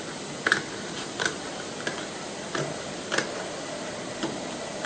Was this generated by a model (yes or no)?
no